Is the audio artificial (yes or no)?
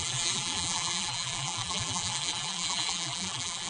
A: yes